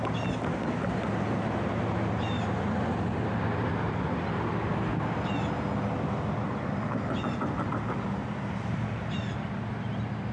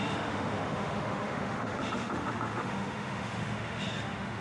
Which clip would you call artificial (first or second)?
second